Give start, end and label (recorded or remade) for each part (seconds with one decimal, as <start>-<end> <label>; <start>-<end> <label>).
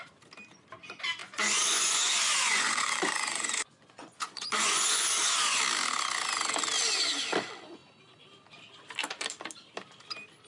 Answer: 0.0-1.2 recorded; 1.2-5.6 remade; 5.6-10.5 recorded